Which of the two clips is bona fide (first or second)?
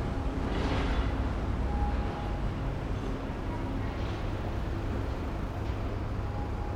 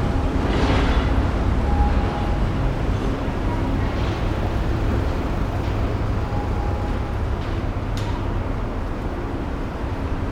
first